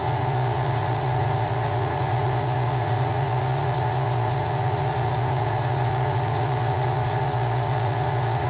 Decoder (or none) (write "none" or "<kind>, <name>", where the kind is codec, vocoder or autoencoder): vocoder, Vocos